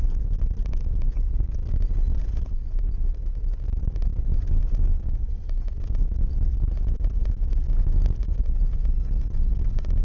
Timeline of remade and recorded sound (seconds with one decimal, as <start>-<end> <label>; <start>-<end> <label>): 0.0-10.0 recorded